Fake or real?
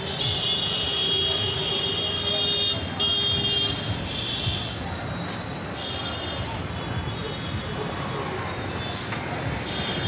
real